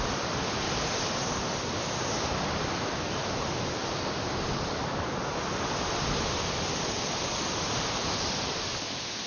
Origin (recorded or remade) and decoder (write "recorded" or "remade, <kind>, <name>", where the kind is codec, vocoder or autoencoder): recorded